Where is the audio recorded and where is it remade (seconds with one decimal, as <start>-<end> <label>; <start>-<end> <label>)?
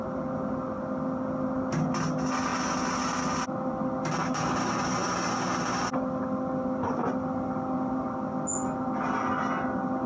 0.0-10.1 recorded